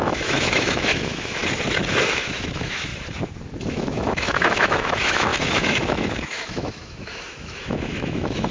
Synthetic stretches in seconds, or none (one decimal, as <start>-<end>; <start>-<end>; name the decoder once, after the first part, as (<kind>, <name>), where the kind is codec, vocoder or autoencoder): 0.0-1.4 (autoencoder, DAC-VAE); 2.0-2.9; 3.7-8.5